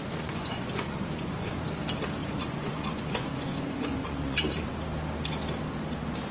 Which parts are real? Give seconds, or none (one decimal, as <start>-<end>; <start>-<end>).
1.6-2.2; 4.7-6.3